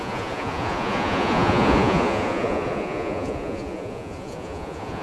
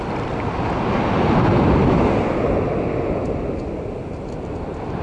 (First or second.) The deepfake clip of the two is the first